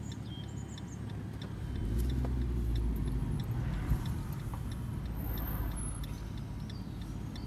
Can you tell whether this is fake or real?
real